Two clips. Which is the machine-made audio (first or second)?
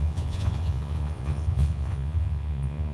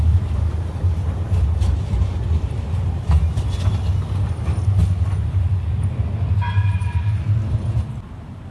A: first